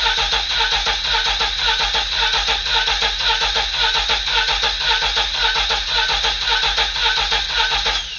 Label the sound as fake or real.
real